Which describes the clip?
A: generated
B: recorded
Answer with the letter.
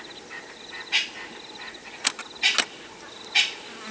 B